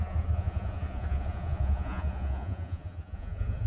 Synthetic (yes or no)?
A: yes